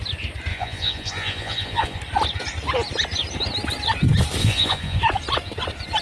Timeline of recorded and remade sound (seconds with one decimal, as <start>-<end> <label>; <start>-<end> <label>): 0.0-0.5 recorded; 0.5-2.0 remade; 2.0-4.4 recorded; 4.4-5.0 remade; 5.0-6.0 recorded